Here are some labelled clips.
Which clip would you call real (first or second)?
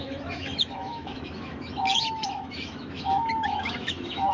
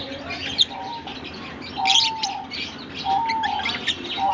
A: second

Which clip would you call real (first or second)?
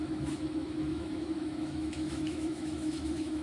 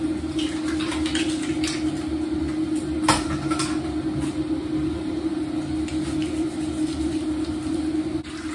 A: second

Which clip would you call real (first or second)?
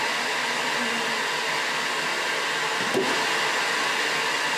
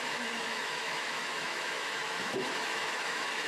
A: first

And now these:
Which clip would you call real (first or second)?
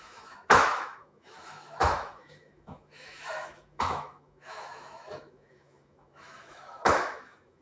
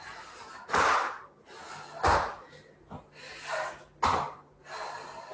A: second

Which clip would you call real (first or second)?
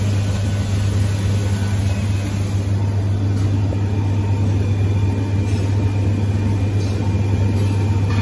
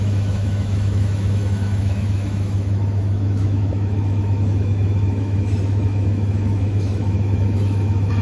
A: first